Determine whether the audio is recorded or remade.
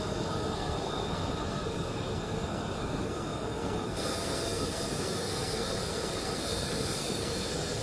remade